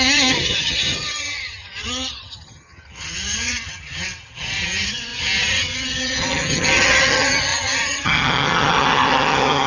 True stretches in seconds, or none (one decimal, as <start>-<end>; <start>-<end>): none